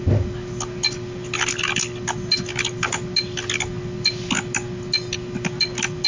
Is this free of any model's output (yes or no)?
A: yes